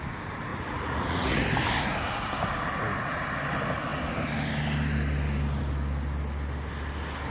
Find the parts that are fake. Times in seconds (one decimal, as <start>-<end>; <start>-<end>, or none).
0.5-1.4